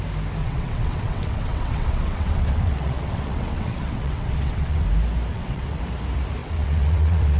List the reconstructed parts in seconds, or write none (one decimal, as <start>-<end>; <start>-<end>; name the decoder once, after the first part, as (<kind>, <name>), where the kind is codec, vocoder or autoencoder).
0.4-4.8 (vocoder, WaveNeXt); 5.3-5.8; 6.4-7.4